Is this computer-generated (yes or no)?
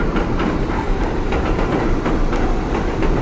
no